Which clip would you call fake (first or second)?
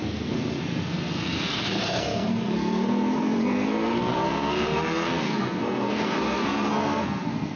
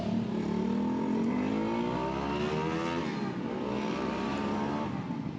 first